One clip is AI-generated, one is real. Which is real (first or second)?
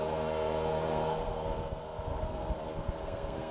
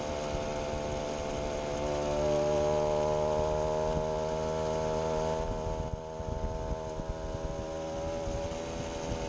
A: second